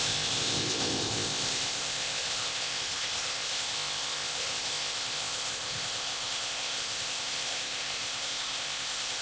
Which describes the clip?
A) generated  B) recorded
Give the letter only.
A